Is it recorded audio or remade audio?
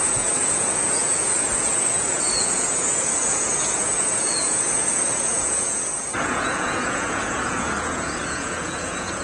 remade